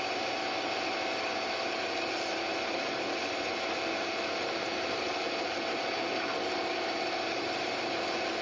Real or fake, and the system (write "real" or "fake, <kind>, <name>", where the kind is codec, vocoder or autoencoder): real